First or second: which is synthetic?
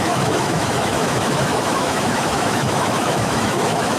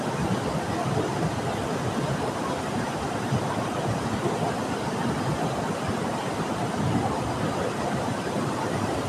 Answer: first